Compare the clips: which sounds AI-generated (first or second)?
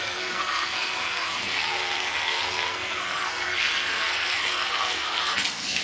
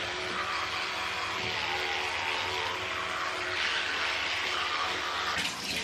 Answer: first